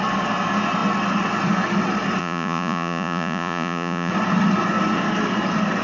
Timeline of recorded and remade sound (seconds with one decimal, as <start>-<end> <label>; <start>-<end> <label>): 0.0-2.2 recorded; 2.2-4.1 remade; 4.1-5.8 recorded